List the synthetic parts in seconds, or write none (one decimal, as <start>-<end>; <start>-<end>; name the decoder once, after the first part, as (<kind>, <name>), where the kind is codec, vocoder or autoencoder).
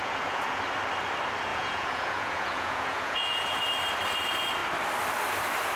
0.0-0.6 (vocoder, Vocos); 1.5-3.6